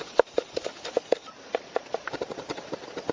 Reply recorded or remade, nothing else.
recorded